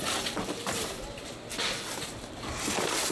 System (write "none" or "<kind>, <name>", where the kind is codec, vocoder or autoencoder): none